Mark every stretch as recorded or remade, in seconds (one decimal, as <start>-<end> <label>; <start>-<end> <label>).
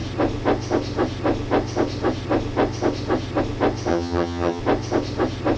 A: 0.0-3.9 recorded; 3.9-4.6 remade; 4.6-5.6 recorded